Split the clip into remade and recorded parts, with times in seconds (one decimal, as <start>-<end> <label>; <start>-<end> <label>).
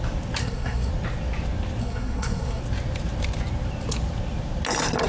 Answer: 0.0-0.4 recorded; 0.4-0.9 remade; 0.9-1.8 recorded; 1.8-2.6 remade; 2.6-5.1 recorded